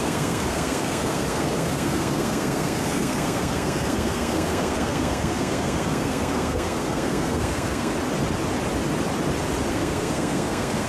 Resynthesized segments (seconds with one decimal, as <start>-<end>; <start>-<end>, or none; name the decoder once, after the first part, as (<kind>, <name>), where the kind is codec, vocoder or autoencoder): 0.0-7.9 (codec, SNAC); 9.7-10.9